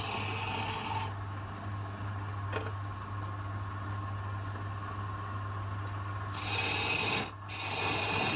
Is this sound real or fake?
real